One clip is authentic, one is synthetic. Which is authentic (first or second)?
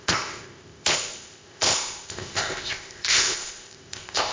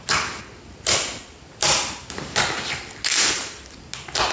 second